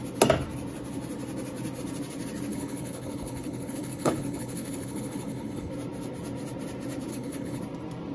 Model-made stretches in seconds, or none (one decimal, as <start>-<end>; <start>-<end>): 2.5-5.7; 7.1-7.6